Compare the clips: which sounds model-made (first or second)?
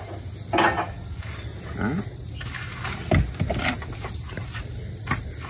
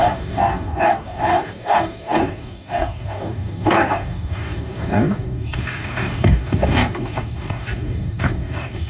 second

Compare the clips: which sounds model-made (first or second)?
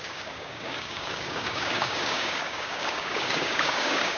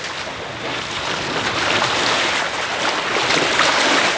first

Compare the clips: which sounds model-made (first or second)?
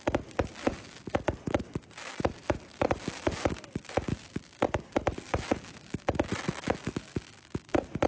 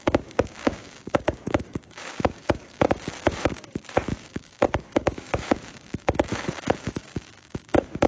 second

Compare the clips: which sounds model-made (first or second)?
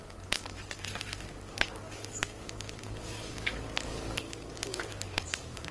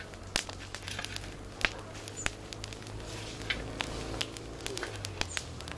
first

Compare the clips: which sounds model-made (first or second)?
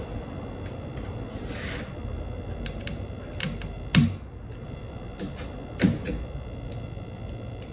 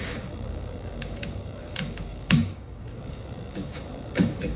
second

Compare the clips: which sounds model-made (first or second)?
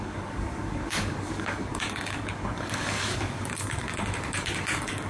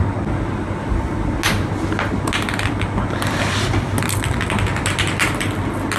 first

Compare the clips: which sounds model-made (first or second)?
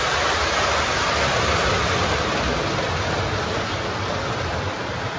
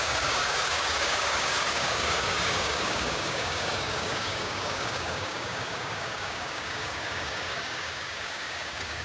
second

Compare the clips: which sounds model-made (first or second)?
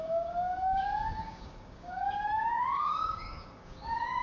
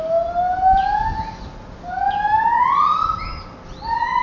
first